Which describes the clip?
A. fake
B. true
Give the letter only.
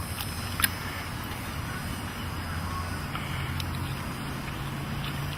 B